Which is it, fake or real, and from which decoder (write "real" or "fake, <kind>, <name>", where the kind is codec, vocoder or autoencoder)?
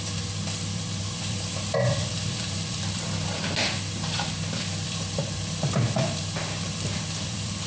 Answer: fake, vocoder, BigVGAN v2